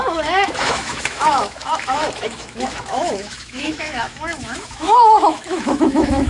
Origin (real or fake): fake